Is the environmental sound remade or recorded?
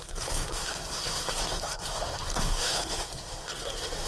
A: remade